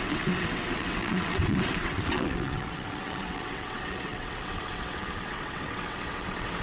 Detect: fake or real fake